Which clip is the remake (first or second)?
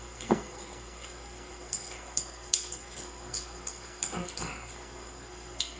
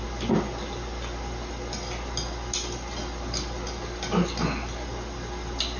first